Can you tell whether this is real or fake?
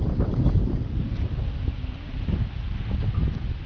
real